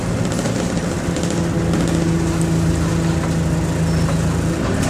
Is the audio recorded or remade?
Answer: recorded